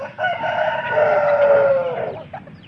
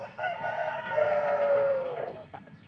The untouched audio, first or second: first